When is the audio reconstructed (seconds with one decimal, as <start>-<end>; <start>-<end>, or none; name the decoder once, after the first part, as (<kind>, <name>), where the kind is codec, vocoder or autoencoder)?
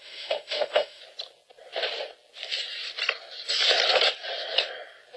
0.0-1.0 (autoencoder, DAC-VAE)